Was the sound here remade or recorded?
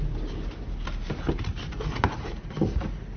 recorded